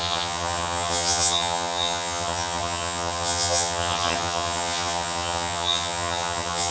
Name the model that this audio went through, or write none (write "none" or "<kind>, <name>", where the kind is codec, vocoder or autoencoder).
vocoder, HiFi-GAN